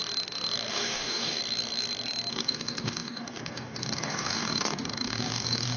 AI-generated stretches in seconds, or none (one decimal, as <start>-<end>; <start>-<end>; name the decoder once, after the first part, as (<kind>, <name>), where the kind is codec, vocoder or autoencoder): 0.7-1.4 (codec, DAC); 2.3-5.8